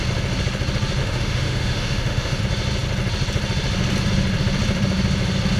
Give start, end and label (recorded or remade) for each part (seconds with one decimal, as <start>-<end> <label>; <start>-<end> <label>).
0.0-1.0 recorded; 1.0-2.4 remade; 2.4-5.6 recorded